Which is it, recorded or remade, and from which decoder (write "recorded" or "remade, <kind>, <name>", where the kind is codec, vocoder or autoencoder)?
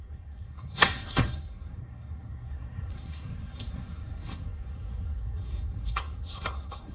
remade, codec, SNAC